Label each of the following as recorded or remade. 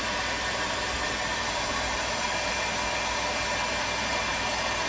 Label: recorded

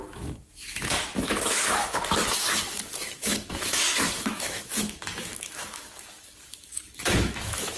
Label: remade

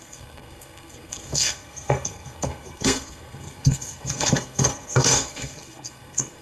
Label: remade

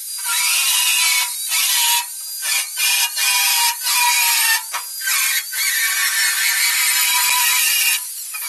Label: recorded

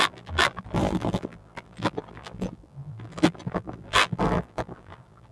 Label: remade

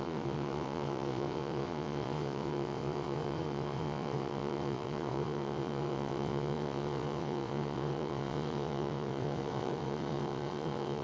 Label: remade